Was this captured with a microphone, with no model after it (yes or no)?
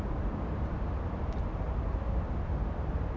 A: yes